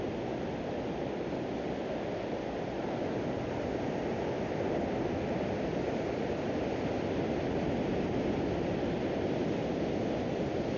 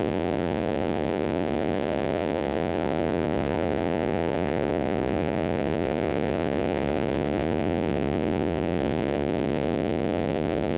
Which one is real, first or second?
first